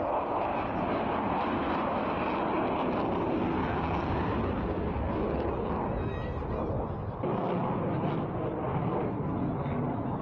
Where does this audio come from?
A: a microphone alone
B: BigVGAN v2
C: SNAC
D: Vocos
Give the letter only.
A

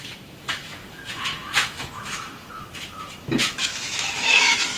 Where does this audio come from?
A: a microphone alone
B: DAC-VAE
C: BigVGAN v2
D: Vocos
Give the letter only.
B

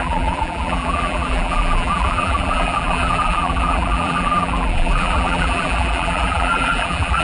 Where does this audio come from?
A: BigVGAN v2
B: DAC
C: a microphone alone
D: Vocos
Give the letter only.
A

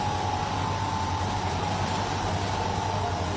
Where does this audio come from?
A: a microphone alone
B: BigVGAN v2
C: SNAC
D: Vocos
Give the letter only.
A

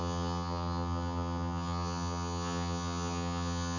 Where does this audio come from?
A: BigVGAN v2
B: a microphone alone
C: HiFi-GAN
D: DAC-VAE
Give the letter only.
C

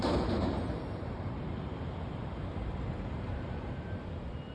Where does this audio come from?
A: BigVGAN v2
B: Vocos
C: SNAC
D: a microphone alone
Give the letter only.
A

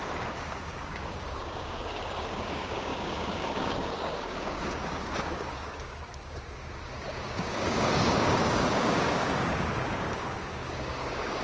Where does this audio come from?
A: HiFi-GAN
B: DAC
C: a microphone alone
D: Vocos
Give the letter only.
B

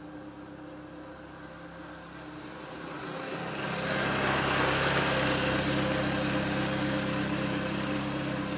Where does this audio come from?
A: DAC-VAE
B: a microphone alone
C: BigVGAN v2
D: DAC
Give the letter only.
B